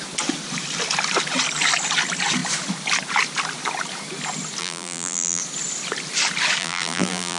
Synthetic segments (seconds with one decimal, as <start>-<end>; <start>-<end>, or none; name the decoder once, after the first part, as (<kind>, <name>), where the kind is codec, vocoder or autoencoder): 4.6-5.4 (vocoder, BigVGAN v2); 6.6-7.4